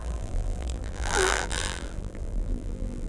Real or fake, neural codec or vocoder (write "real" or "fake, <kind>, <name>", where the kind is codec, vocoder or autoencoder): fake, vocoder, BigVGAN v2